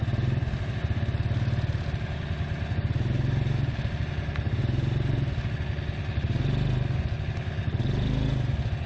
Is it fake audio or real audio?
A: real